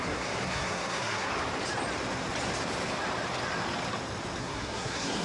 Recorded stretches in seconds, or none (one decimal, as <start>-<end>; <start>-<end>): 1.3-4.4